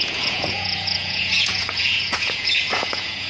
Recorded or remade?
remade